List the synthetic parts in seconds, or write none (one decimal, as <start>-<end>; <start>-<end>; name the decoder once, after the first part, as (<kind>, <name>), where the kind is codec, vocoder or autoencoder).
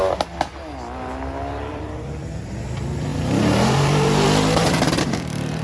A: 1.7-5.6 (vocoder, BigVGAN v2)